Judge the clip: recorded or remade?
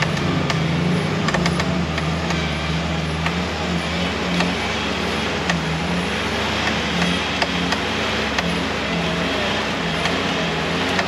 recorded